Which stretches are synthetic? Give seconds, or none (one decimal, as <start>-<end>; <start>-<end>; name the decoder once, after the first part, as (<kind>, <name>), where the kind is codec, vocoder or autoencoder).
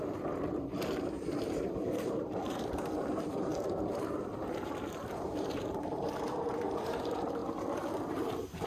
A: 0.0-3.5 (vocoder, BigVGAN v2); 4.0-7.4; 8.1-8.7